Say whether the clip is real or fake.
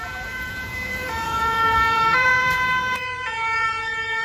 fake